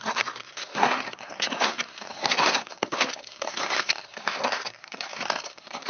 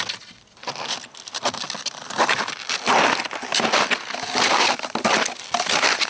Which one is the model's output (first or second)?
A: first